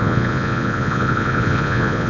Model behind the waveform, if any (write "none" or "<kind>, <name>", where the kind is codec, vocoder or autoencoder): vocoder, Vocos